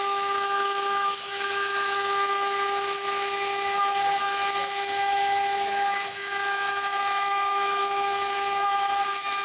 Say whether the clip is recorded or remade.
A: remade